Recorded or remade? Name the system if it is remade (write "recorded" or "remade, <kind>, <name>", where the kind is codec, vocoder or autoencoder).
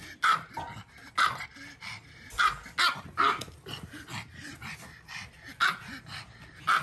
recorded